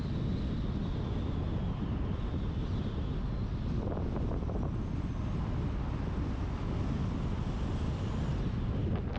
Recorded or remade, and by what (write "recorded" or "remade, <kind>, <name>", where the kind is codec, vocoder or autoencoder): recorded